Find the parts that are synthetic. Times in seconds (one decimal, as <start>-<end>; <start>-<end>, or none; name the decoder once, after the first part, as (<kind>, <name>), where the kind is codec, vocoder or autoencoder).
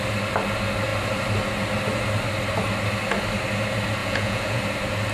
4.0-4.6 (vocoder, Vocos)